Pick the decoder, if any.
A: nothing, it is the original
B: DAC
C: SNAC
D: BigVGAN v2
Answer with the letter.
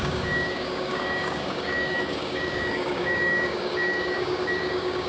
B